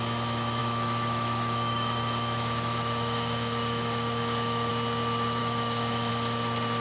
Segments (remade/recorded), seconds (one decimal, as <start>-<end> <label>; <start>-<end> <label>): 0.0-0.6 recorded; 0.6-4.7 remade; 4.7-5.4 recorded; 5.4-6.1 remade; 6.1-6.8 recorded